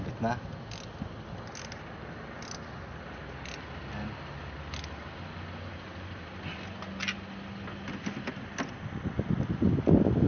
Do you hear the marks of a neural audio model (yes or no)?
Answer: no